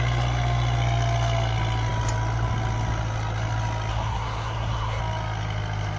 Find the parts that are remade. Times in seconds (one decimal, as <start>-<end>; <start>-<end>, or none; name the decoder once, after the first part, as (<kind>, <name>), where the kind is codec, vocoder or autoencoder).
3.9-5.0 (codec, SNAC)